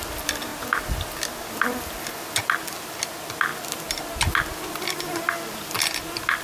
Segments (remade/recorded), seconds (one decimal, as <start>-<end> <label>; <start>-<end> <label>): 0.0-6.4 recorded